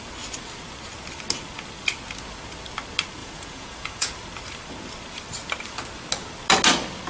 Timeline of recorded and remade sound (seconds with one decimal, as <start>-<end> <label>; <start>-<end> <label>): 0.0-3.2 recorded; 3.2-4.1 remade; 4.1-7.1 recorded